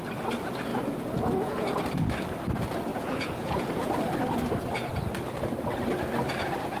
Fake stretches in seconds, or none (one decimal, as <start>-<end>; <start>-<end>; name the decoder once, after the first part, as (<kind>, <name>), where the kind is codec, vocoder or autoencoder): 0.7-1.8 (vocoder, Vocos); 2.9-3.8